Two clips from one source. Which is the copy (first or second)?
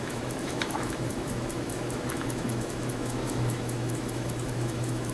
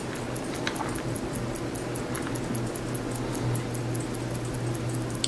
first